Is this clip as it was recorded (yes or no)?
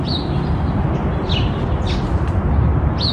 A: yes